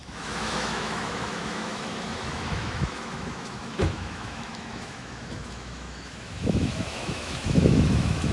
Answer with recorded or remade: remade